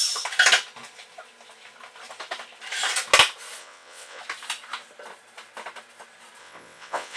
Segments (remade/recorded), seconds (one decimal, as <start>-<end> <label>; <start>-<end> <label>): 0.0-3.6 recorded; 3.6-4.2 remade; 4.2-6.4 recorded; 6.4-7.2 remade